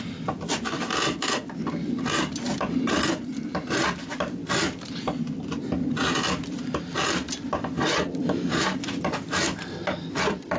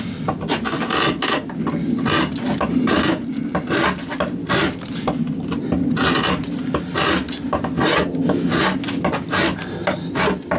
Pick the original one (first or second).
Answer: second